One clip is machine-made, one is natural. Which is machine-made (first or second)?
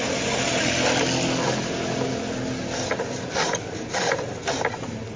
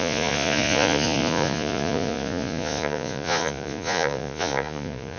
second